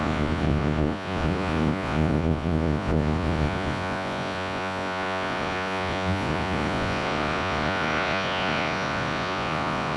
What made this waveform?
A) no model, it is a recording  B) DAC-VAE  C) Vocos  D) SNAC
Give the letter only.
C